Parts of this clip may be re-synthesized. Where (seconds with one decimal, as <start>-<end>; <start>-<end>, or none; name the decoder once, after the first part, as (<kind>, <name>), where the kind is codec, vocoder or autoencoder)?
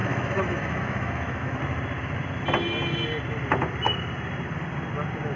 0.0-1.6 (autoencoder, DAC-VAE)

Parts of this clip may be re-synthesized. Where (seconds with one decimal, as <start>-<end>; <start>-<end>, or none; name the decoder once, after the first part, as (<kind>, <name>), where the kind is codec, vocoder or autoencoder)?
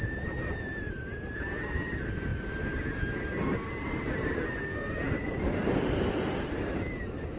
none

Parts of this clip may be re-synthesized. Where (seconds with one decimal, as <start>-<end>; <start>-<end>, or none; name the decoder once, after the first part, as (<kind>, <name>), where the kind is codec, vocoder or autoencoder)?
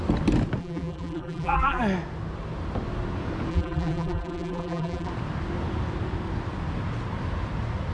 0.6-1.8 (vocoder, BigVGAN v2); 3.5-5.1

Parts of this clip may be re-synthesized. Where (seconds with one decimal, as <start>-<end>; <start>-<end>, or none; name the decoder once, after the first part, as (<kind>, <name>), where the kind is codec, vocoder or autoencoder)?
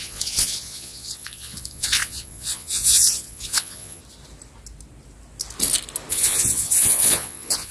0.0-4.0 (vocoder, Vocos); 6.1-7.7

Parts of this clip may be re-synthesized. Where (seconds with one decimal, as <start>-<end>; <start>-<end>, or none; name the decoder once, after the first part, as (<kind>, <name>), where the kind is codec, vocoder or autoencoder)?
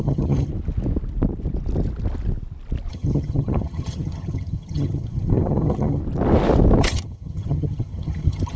0.0-0.5 (vocoder, HiFi-GAN); 2.9-6.0; 6.8-8.6